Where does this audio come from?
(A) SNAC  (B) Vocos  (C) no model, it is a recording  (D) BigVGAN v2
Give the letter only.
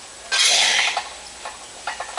C